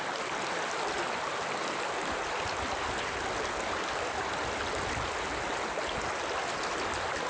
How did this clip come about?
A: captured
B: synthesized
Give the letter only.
A